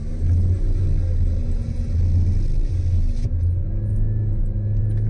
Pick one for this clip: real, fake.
real